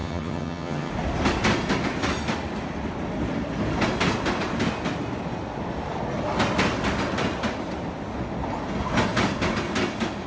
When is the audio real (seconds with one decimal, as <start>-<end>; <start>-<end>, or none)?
0.9-10.3